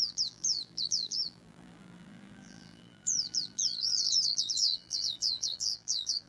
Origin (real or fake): fake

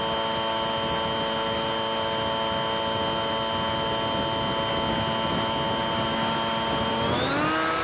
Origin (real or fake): real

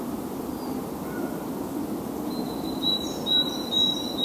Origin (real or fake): real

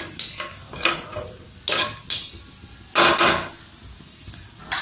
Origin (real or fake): real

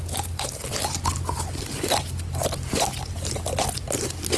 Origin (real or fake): real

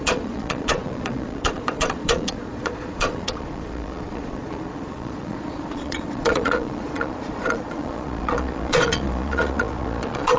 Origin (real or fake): fake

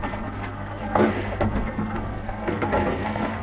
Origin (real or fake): fake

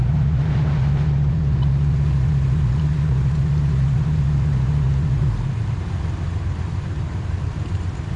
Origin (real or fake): real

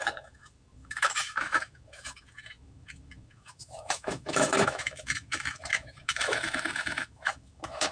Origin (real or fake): fake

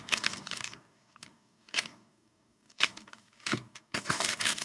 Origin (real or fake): fake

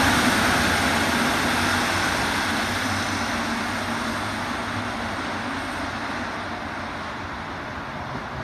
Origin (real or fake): real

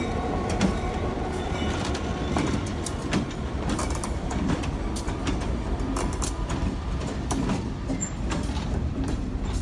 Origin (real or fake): fake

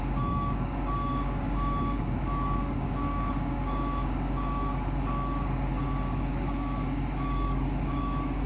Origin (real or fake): fake